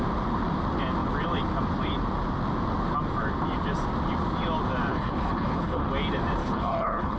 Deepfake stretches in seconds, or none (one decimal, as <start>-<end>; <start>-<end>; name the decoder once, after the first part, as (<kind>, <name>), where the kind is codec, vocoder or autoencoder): 4.9-5.9 (codec, HILCodec); 6.4-7.2

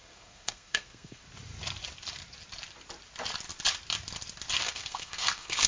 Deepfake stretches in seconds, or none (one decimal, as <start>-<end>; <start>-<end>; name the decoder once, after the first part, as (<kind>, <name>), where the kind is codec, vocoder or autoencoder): 0.0-1.2 (codec, SNAC); 4.6-5.7

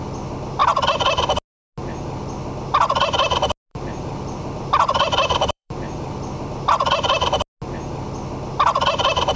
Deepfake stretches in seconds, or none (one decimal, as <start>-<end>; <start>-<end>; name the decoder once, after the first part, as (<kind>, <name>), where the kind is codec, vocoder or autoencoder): 3.7-6.7 (vocoder, BigVGAN v2)

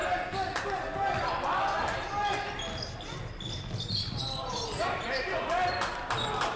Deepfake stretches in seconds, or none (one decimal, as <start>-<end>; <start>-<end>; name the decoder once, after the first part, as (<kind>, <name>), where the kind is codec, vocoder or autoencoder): none